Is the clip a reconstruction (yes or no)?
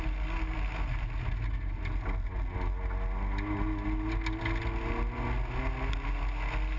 no